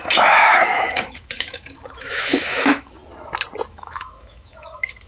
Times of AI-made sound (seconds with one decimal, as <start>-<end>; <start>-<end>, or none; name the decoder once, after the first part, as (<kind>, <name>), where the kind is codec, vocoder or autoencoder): 0.0-3.0 (autoencoder, DAC-VAE); 3.7-5.1